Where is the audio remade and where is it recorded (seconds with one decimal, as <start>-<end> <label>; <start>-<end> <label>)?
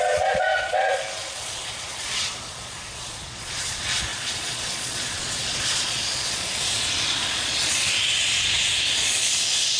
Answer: 0.0-9.8 remade